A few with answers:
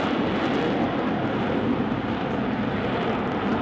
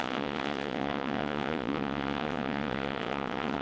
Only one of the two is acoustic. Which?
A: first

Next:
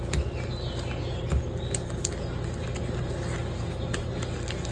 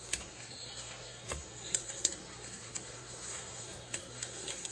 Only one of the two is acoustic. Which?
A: first